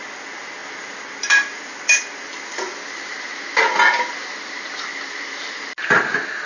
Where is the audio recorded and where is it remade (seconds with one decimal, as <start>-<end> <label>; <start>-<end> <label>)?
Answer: 0.0-0.6 recorded; 0.6-1.6 remade; 1.6-6.5 recorded